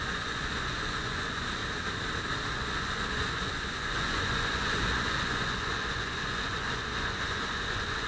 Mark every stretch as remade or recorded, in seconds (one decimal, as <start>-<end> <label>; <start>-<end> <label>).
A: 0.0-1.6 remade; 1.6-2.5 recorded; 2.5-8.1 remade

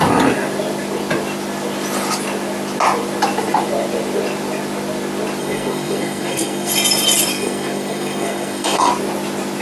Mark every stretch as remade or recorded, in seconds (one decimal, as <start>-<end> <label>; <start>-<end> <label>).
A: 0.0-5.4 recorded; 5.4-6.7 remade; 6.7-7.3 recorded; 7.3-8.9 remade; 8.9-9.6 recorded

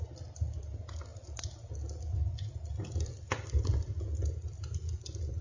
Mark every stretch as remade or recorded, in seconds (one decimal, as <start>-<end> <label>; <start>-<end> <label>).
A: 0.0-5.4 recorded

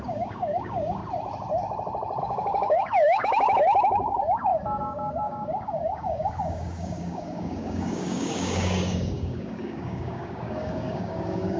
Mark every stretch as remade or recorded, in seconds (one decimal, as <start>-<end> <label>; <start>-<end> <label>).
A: 0.0-1.0 remade; 1.0-2.2 recorded; 2.2-11.6 remade

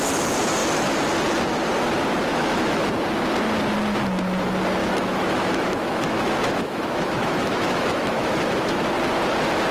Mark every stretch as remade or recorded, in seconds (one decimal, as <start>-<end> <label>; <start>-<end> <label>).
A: 0.0-2.3 recorded; 2.3-2.9 remade; 2.9-4.8 recorded; 4.8-8.9 remade; 8.9-9.7 recorded

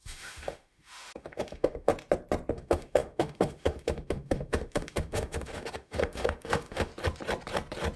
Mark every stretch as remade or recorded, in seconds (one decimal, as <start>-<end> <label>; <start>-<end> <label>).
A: 0.0-1.9 remade; 1.9-2.5 recorded; 2.5-6.9 remade; 6.9-8.0 recorded

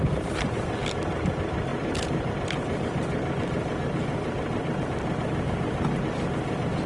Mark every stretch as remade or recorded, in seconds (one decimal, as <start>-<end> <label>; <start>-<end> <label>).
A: 0.0-6.9 recorded